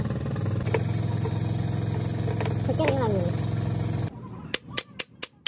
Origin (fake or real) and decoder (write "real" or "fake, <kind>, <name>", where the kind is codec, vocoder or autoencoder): real